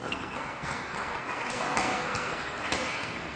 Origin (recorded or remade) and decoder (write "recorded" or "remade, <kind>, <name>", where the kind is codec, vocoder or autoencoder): remade, codec, SNAC